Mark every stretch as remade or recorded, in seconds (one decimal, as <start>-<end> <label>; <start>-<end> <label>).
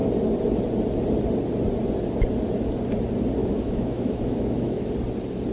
0.0-3.4 recorded; 3.4-4.9 remade; 4.9-5.5 recorded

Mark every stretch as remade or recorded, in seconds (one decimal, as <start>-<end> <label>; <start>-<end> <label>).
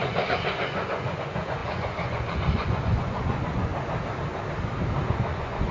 0.0-3.7 remade; 3.7-5.1 recorded; 5.1-5.7 remade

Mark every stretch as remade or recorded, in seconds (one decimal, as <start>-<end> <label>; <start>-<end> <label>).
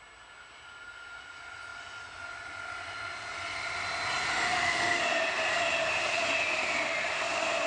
0.0-4.3 recorded; 4.3-5.0 remade; 5.0-7.7 recorded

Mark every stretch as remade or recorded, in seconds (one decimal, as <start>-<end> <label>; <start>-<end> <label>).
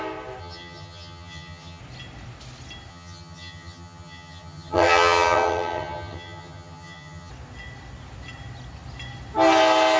0.0-0.4 recorded; 0.4-1.8 remade; 1.8-2.9 recorded; 2.9-7.3 remade; 7.3-10.0 recorded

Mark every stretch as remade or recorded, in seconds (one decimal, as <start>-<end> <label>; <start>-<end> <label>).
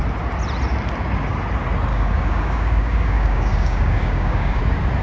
0.0-1.9 recorded; 1.9-4.6 remade; 4.6-5.0 recorded